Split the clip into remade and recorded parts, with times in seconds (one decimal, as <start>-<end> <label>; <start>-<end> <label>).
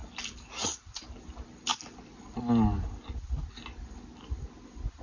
0.0-5.0 recorded